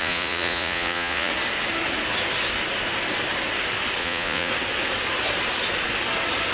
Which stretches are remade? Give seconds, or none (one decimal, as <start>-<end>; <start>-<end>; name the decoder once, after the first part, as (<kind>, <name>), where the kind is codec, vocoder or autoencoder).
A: 0.0-1.3 (vocoder, Vocos); 4.0-4.5